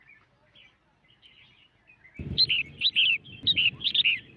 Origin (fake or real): real